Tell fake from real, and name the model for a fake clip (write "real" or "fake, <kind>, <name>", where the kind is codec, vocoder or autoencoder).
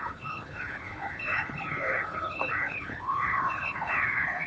fake, codec, HILCodec